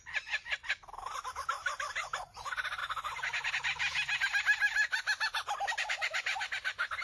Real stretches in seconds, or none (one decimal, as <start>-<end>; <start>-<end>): 0.0-7.0